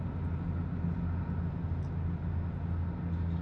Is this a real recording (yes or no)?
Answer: yes